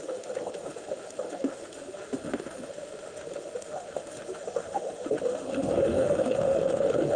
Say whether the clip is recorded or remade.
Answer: remade